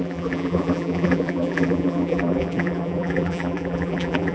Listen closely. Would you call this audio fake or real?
fake